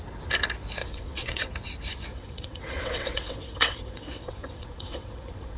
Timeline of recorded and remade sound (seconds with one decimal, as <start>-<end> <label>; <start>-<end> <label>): 0.0-0.8 recorded; 0.8-1.5 remade; 1.5-2.1 recorded; 2.1-5.6 remade